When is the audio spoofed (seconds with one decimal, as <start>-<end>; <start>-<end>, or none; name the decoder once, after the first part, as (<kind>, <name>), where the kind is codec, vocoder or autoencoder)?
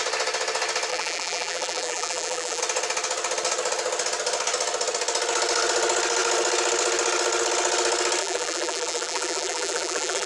0.9-2.6 (vocoder, BigVGAN v2); 8.2-10.3